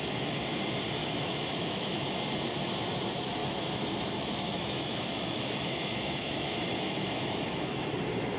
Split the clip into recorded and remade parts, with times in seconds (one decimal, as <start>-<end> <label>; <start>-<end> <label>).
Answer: 0.0-1.0 recorded; 1.0-2.0 remade; 2.0-3.4 recorded; 3.4-7.9 remade; 7.9-8.4 recorded